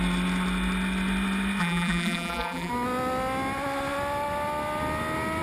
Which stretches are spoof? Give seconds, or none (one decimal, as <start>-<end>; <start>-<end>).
1.6-2.7